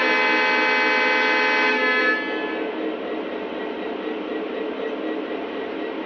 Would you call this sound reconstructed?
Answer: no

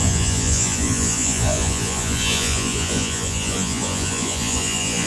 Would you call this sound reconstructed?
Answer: yes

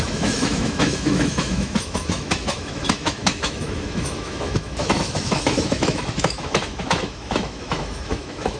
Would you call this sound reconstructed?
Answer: yes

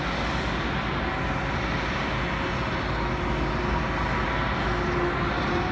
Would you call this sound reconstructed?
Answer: no